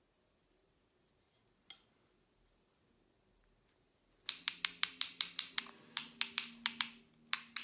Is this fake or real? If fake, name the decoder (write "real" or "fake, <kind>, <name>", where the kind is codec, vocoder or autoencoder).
real